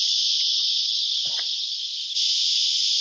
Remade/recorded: recorded